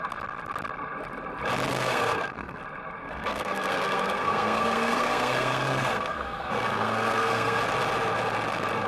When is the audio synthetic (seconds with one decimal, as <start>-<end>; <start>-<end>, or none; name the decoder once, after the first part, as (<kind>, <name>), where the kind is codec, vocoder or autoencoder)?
1.7-2.6 (codec, SNAC); 3.0-7.6